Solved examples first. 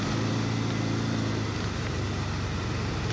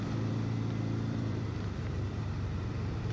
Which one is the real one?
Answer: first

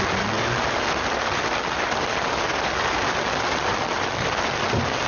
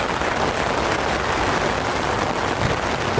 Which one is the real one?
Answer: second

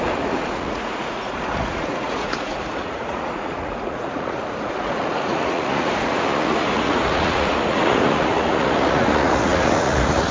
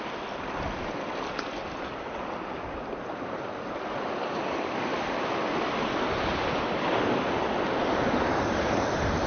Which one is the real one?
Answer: second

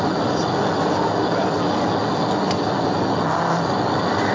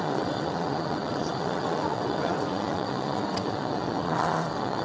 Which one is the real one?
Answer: first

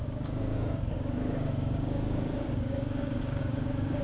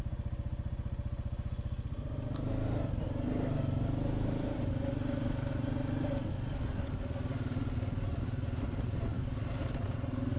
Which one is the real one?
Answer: second